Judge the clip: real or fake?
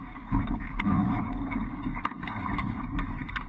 fake